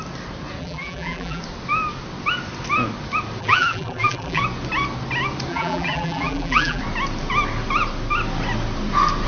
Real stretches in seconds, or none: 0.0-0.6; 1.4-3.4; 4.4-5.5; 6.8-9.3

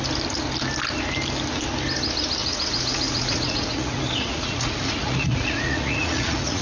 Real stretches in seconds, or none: 0.0-2.4

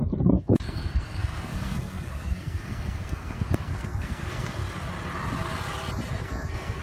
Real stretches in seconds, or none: 4.6-6.1

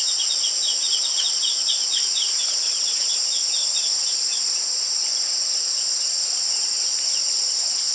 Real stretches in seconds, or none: 0.0-7.9